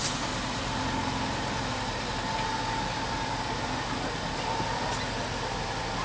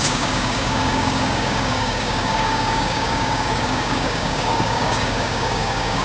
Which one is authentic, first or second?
first